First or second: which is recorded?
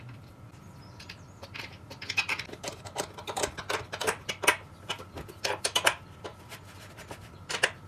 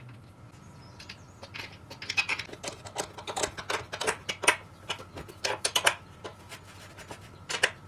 second